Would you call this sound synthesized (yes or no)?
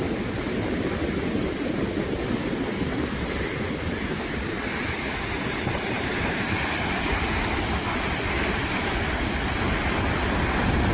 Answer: no